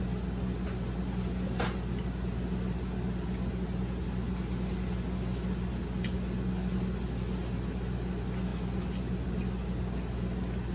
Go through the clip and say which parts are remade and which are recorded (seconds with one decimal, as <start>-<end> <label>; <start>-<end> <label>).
0.0-10.7 recorded